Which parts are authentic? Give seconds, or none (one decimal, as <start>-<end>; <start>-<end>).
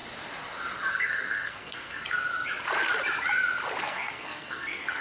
0.0-0.9; 2.3-3.8